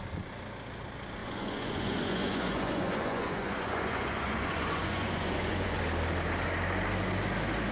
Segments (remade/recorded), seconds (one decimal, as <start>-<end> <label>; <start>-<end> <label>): 0.0-1.2 recorded; 1.2-5.8 remade; 5.8-7.7 recorded